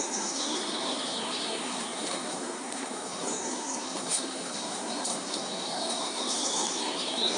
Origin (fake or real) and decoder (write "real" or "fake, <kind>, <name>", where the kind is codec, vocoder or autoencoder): fake, codec, SNAC